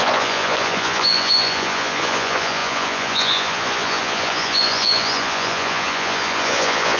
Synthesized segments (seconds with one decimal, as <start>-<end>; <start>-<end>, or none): 0.0-7.0